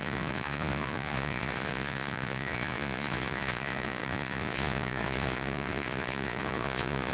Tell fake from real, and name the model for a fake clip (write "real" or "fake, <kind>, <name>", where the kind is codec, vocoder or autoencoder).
fake, vocoder, Vocos